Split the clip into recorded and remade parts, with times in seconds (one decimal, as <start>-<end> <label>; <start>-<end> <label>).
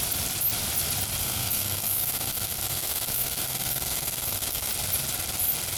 0.0-1.2 recorded; 1.2-4.7 remade; 4.7-5.8 recorded